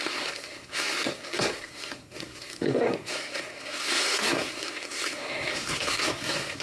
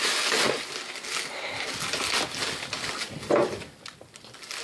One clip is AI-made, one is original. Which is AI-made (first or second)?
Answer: first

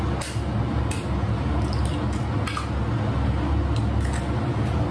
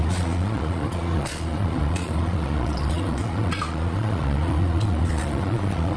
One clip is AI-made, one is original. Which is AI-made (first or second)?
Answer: second